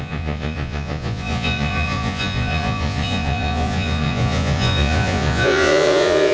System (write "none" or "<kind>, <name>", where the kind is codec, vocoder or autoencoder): vocoder, Vocos